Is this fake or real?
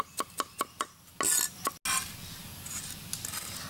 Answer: real